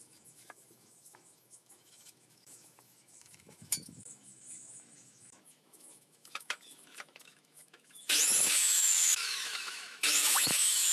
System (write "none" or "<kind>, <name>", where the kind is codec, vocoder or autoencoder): autoencoder, DAC-VAE